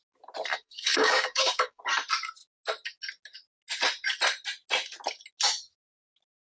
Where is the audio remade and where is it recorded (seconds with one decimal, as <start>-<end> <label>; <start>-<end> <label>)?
0.0-0.5 recorded; 0.5-1.8 remade; 1.8-6.5 recorded

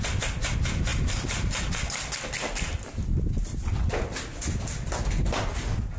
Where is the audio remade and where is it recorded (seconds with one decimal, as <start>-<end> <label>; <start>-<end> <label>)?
0.0-6.0 recorded

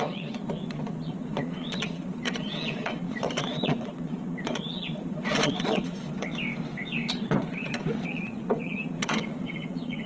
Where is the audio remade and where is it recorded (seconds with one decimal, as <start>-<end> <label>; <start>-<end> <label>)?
0.0-6.3 remade; 6.3-7.1 recorded; 7.1-10.1 remade

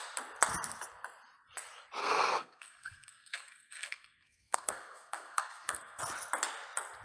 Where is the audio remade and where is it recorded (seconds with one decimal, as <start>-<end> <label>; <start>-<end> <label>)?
0.0-2.0 recorded; 2.0-6.0 remade; 6.0-7.0 recorded

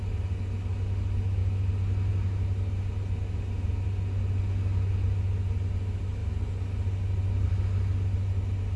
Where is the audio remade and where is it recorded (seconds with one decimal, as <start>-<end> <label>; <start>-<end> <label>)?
0.0-8.8 recorded

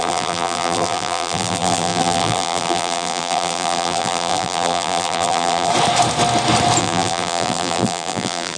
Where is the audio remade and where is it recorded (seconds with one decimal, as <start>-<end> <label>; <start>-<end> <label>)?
0.0-5.7 remade; 5.7-6.8 recorded; 6.8-8.6 remade